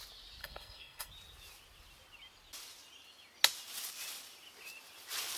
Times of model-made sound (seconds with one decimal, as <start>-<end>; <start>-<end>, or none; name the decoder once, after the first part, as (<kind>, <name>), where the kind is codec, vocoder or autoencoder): 0.4-1.1 (codec, SNAC)